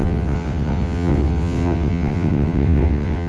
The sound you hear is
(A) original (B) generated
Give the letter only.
B